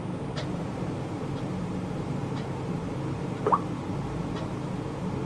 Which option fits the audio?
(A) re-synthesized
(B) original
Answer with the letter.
A